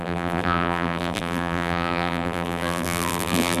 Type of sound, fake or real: fake